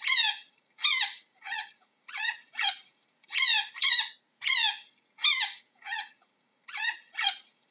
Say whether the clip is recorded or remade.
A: remade